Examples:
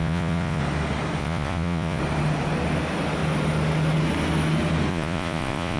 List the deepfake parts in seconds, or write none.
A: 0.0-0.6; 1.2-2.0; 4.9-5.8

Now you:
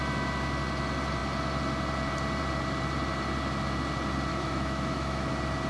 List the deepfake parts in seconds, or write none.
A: 4.3-5.3

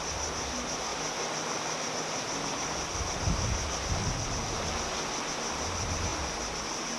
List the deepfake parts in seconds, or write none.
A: 0.9-4.3

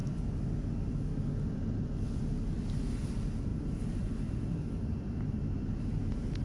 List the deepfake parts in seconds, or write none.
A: 0.0-6.4

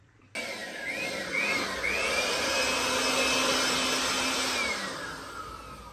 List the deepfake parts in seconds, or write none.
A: none

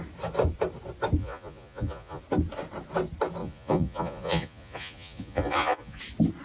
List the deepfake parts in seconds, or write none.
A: 1.2-2.2; 3.4-6.0